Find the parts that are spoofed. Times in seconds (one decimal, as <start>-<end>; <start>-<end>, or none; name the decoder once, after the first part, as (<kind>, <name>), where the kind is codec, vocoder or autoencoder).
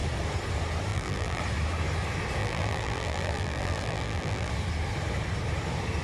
0.9-1.4 (vocoder, BigVGAN v2); 2.4-4.5